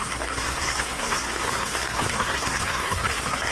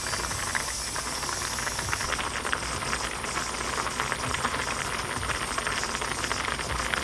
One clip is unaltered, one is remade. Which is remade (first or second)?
first